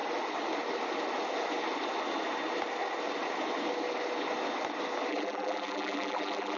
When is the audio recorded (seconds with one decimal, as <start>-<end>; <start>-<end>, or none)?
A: 0.0-5.1